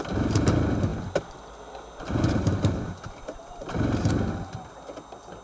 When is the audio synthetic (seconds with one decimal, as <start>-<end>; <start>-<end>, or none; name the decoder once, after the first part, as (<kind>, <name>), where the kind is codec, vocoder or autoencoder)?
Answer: 0.9-4.1 (vocoder, BigVGAN v2)